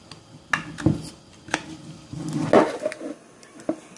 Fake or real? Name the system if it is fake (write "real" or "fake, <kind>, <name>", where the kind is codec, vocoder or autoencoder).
real